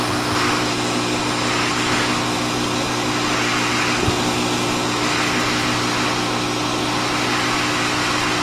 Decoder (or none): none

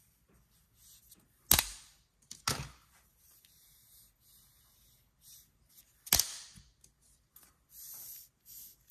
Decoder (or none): none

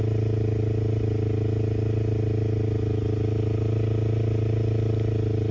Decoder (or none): none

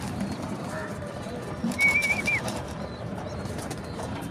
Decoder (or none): vocoder, BigVGAN v2